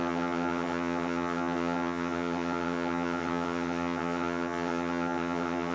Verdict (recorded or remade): remade